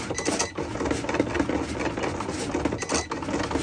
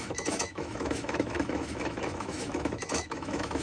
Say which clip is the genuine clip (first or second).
first